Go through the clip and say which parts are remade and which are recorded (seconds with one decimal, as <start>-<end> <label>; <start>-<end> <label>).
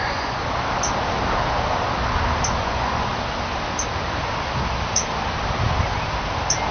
0.0-0.4 remade; 0.4-2.6 recorded; 2.6-3.1 remade; 3.1-6.7 recorded